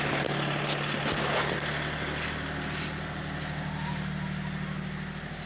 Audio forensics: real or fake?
real